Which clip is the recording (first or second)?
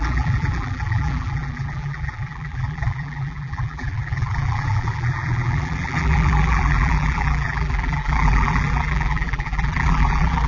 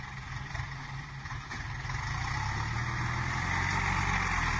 second